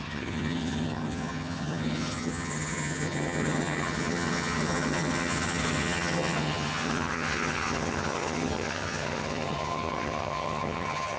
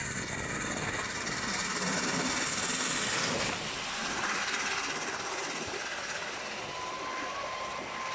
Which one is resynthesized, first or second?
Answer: first